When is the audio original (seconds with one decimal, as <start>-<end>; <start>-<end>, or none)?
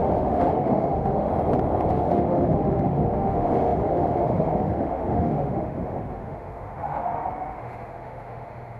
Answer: 1.3-1.9